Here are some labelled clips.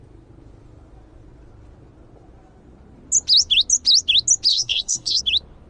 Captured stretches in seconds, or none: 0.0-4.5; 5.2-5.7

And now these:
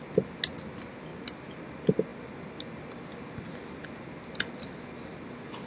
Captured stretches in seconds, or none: 0.0-5.7

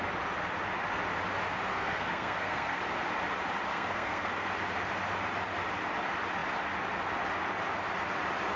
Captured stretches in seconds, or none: 0.0-1.7; 2.8-3.7; 4.5-8.6

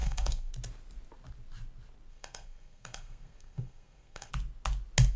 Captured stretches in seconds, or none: 0.5-2.1; 4.3-5.2

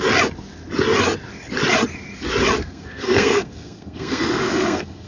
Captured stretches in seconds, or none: 0.0-2.6